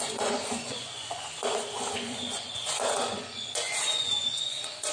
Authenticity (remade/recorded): remade